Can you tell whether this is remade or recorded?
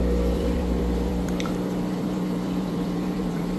remade